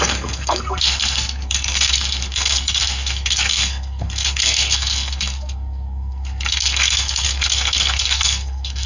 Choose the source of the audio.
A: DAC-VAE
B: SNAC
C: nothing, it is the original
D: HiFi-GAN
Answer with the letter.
B